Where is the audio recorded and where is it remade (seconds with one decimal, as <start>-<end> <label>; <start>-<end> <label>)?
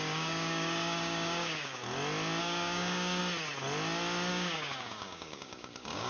0.0-1.8 remade; 1.8-2.4 recorded; 2.4-3.2 remade; 3.2-4.3 recorded; 4.3-6.1 remade